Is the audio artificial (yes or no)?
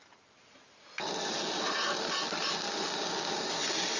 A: no